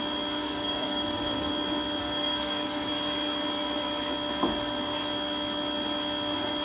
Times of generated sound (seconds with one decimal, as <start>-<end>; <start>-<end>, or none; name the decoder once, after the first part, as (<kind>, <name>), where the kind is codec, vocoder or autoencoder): 0.4-1.5 (codec, DAC); 2.0-2.9